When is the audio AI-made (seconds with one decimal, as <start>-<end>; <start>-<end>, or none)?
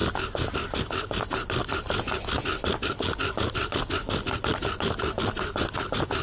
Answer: none